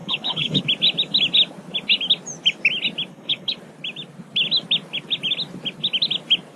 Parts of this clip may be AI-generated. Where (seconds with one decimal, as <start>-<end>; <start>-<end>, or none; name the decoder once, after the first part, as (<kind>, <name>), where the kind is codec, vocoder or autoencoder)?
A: 0.0-0.6 (codec, HILCodec); 3.1-3.6